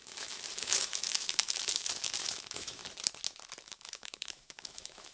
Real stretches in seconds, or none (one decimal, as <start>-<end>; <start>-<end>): 2.8-3.6